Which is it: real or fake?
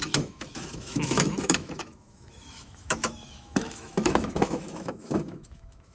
fake